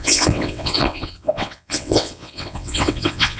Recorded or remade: remade